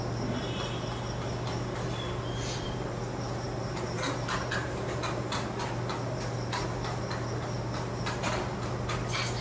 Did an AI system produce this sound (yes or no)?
no